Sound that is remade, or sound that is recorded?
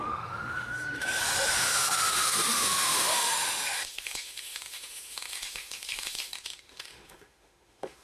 remade